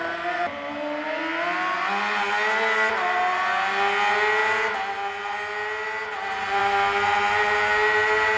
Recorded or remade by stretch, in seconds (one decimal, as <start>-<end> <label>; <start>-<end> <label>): 0.0-1.2 remade; 1.2-8.4 recorded